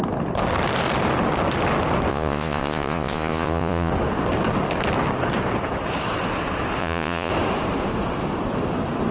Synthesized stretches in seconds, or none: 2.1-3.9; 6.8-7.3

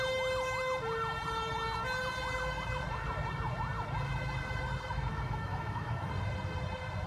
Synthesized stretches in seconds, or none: 5.1-6.1

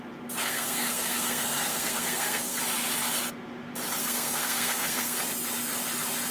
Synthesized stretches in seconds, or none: 0.4-2.6; 4.0-5.2